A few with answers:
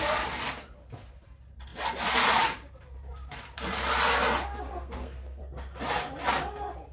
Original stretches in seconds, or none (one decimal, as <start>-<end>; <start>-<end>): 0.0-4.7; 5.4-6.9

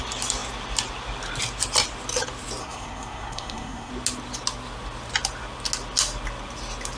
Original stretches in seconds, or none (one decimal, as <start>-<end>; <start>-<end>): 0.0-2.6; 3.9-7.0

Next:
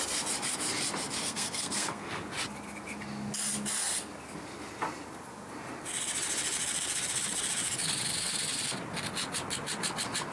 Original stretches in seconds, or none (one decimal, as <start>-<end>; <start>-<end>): 0.0-1.2; 2.2-10.3